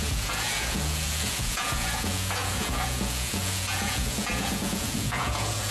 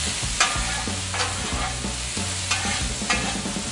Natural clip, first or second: second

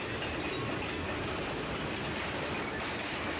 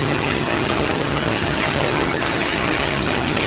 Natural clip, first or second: first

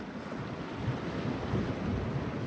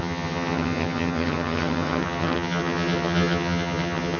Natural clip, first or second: first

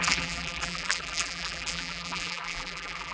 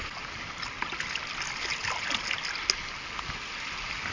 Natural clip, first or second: second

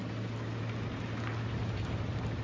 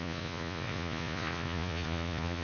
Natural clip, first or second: first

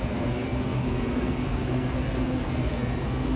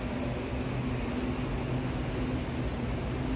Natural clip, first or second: second